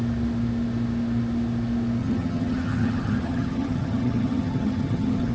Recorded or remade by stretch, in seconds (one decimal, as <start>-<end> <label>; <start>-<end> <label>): 0.0-2.0 recorded; 2.0-5.3 remade